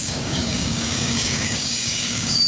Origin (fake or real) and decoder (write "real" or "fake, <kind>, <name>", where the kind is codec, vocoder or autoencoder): fake, codec, DAC